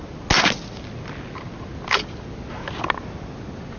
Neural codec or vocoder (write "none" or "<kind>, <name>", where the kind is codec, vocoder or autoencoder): none